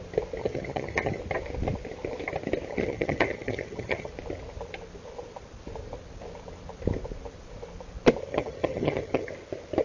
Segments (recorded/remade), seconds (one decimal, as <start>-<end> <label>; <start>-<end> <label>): 0.0-0.4 recorded; 0.4-1.2 remade; 1.2-2.7 recorded; 2.7-4.1 remade; 4.1-8.3 recorded; 8.3-9.3 remade; 9.3-9.8 recorded